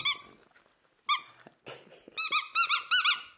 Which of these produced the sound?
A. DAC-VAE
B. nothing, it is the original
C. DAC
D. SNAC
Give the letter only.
B